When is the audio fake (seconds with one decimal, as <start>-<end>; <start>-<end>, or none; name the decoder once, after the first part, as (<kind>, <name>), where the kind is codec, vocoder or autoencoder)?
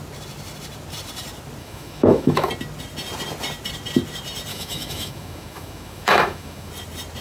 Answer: 1.6-2.5 (autoencoder, DAC-VAE); 4.5-6.7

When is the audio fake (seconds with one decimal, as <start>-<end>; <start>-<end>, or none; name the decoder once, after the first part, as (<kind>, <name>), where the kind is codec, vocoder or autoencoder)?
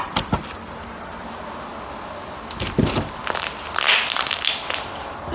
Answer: none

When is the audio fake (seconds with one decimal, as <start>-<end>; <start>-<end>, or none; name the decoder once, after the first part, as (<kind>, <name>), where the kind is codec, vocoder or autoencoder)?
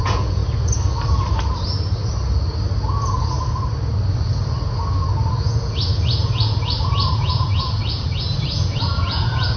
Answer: 0.0-0.4 (vocoder, Vocos); 5.3-9.6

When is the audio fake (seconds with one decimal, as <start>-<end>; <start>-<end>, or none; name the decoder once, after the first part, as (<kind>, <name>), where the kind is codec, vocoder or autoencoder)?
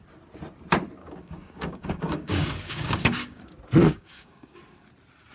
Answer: 1.0-3.4 (codec, DAC); 3.8-4.6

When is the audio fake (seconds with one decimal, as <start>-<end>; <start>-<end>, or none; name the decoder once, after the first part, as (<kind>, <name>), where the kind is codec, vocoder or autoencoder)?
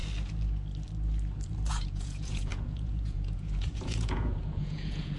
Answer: 1.7-5.2 (vocoder, Vocos)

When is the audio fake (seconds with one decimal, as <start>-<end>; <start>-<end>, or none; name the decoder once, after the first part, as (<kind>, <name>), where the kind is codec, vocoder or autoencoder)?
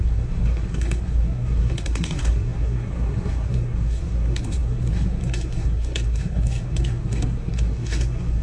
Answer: 0.0-8.4 (codec, SNAC)